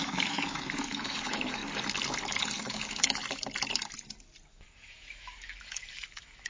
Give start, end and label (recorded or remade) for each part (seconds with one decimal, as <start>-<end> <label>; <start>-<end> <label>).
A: 0.0-1.6 remade; 1.6-2.6 recorded; 2.6-3.2 remade; 3.2-4.5 recorded; 4.5-6.5 remade